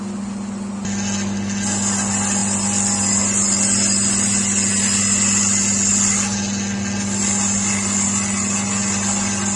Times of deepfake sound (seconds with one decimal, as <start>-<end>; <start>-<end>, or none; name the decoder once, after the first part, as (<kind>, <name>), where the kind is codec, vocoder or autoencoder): none